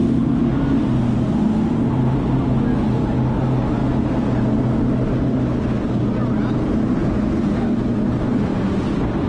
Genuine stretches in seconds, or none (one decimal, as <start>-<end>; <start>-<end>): 0.0-9.3